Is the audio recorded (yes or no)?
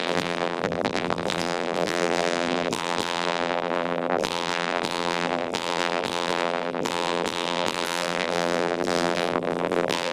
no